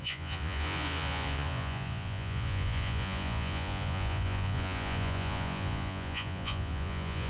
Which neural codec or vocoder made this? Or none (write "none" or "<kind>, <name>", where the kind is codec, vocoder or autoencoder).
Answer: vocoder, Vocos